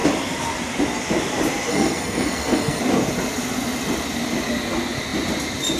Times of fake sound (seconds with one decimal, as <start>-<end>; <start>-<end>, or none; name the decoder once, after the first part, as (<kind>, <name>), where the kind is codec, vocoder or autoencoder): 1.7-2.8 (codec, SNAC)